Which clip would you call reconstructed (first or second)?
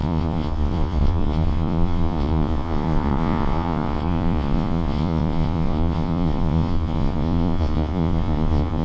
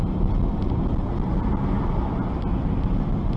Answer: first